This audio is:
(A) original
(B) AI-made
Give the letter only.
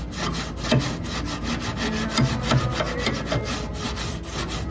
A